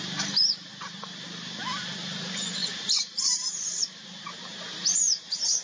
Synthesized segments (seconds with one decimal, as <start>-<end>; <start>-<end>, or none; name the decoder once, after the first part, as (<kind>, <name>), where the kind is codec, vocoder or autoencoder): 0.0-1.6 (vocoder, BigVGAN v2); 2.2-5.6